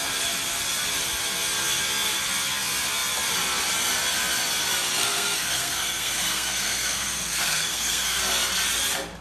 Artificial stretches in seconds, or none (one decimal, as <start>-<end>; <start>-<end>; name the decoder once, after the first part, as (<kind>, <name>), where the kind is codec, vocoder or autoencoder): 5.0-8.2 (codec, SNAC)

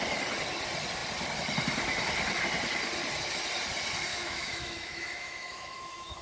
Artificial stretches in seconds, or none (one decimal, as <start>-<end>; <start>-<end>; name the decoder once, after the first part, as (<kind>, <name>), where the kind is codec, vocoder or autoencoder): 4.1-6.2 (autoencoder, DAC-VAE)

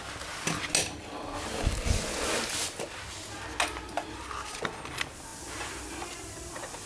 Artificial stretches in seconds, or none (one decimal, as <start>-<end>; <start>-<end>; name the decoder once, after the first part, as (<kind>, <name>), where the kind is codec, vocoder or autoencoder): none

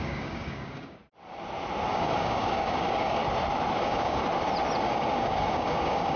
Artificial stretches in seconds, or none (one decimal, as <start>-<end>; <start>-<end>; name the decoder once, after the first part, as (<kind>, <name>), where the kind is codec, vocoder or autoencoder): 0.0-1.0 (codec, DAC); 1.9-3.2; 3.8-4.2; 4.8-6.2